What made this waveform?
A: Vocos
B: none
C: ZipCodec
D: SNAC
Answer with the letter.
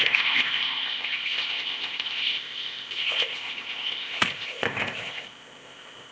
C